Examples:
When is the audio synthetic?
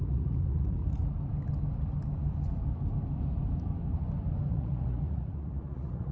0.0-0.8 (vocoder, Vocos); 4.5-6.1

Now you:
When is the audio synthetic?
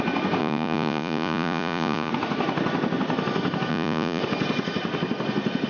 0.4-2.1 (vocoder, Vocos); 3.7-4.2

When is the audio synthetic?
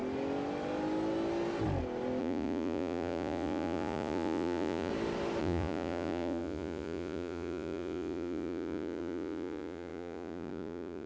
2.2-4.9 (vocoder, Vocos); 5.4-11.1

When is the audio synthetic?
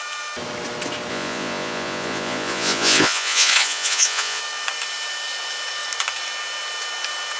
1.1-4.4 (vocoder, Vocos)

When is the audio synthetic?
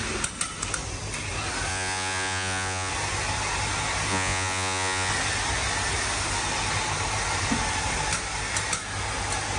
1.7-2.9 (vocoder, Vocos); 4.1-5.1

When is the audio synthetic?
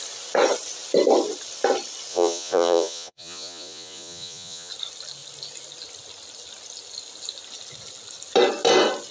2.1-4.7 (vocoder, Vocos)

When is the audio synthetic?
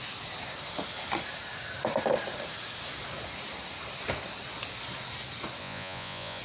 5.6-6.4 (vocoder, Vocos)